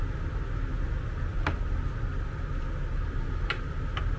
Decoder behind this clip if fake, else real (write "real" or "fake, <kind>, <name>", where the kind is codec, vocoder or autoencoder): real